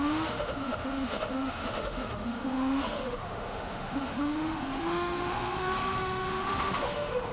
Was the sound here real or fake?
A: fake